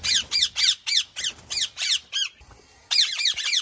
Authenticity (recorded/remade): recorded